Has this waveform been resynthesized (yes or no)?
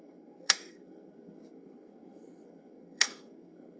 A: yes